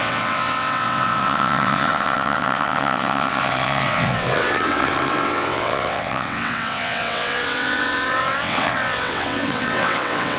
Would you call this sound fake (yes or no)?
yes